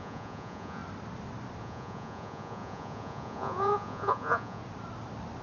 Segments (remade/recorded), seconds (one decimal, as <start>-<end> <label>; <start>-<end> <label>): 0.0-0.8 remade; 0.8-1.6 recorded; 1.6-4.6 remade; 4.6-5.4 recorded